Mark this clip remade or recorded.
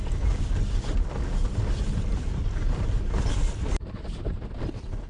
recorded